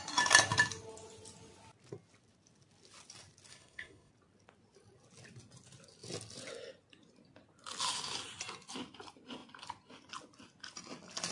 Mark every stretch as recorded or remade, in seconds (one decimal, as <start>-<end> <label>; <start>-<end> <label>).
0.0-3.5 recorded; 3.5-4.1 remade; 4.1-11.3 recorded